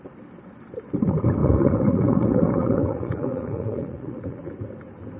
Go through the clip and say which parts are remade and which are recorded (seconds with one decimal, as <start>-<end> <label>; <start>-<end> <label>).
0.0-1.4 recorded; 1.4-4.5 remade; 4.5-5.2 recorded